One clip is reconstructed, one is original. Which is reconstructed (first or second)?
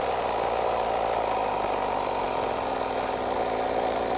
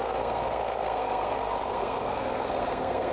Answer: second